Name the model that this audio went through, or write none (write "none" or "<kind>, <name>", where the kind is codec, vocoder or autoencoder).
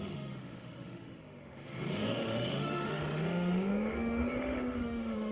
autoencoder, DAC-VAE